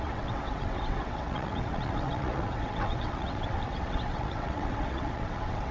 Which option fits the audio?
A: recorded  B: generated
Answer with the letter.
B